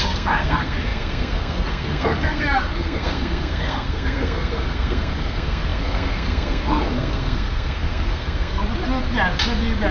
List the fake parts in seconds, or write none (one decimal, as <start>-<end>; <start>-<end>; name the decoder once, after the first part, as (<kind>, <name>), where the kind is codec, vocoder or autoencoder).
0.0-8.6 (codec, SNAC)